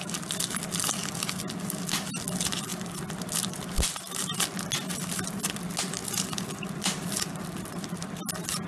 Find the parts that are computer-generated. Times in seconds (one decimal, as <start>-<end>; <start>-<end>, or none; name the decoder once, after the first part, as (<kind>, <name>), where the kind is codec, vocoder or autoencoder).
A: 6.0-8.7 (vocoder, BigVGAN v2)

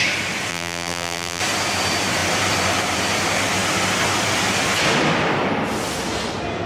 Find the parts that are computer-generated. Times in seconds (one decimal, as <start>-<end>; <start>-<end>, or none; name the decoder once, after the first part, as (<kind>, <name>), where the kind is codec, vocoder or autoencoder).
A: 0.5-1.4 (vocoder, BigVGAN v2)